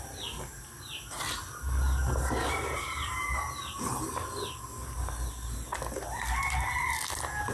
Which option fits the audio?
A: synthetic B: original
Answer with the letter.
B